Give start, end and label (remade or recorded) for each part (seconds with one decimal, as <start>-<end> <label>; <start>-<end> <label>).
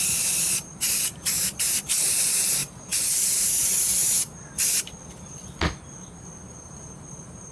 0.0-2.6 remade; 2.6-6.7 recorded; 6.7-7.5 remade